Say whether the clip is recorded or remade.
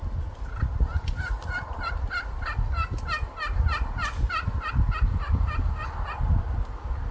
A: recorded